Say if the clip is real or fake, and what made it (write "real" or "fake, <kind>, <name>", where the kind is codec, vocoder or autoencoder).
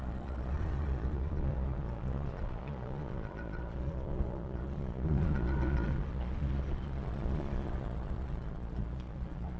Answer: fake, vocoder, Vocos